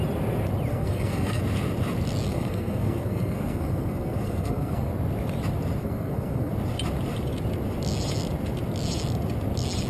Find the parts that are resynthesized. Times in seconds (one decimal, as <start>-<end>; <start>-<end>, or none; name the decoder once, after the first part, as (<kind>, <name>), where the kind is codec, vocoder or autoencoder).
0.7-1.4 (codec, SNAC); 2.3-4.9; 5.8-6.5